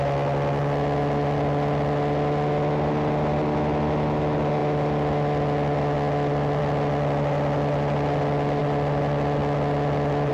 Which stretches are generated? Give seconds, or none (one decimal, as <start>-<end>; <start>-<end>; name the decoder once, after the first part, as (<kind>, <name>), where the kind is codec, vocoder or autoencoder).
none